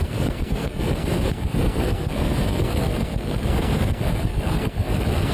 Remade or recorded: remade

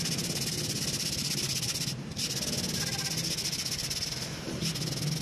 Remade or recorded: recorded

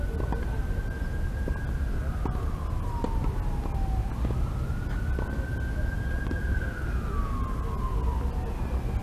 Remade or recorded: recorded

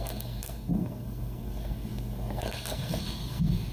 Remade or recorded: remade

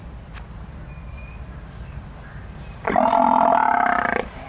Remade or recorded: recorded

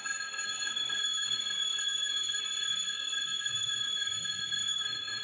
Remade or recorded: remade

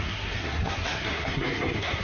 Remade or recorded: remade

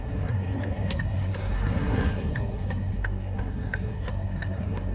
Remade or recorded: remade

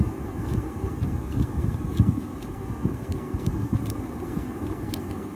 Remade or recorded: remade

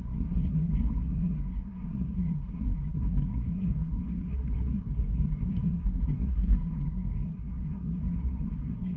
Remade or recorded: remade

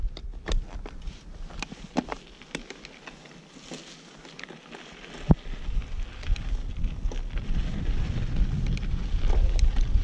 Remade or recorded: recorded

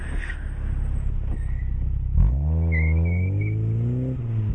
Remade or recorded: recorded